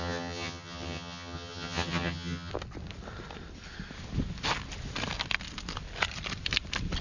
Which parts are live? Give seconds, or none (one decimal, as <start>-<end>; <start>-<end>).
2.5-7.0